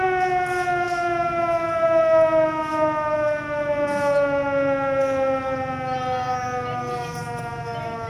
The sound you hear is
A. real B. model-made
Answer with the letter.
A